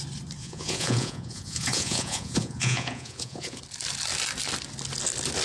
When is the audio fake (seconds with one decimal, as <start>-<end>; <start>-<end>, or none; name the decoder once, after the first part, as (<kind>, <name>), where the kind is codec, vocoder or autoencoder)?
0.4-3.6 (vocoder, Vocos)